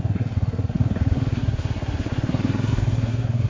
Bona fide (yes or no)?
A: no